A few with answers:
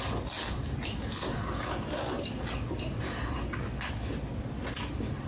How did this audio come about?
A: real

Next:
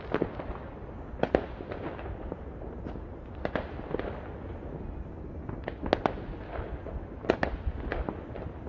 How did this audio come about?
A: real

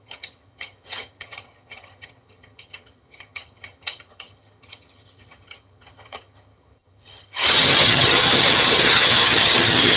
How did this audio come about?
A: fake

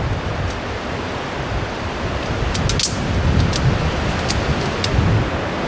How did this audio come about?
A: real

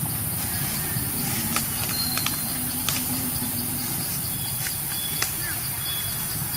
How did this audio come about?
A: fake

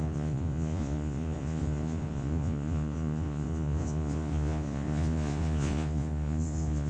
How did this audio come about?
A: fake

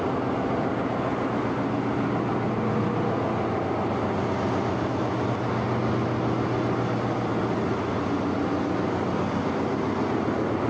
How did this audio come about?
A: real